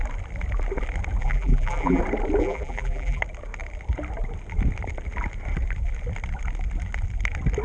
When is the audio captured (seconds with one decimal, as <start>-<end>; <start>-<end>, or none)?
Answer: 0.0-1.2; 2.0-2.4; 3.2-7.6